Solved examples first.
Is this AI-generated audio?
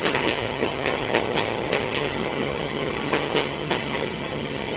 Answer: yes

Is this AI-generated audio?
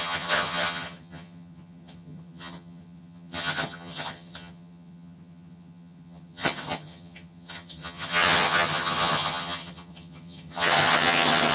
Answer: yes